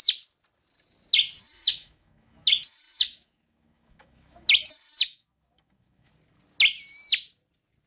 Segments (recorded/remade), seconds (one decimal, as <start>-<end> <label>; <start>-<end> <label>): 0.0-1.4 recorded; 1.4-6.1 remade; 6.1-7.9 recorded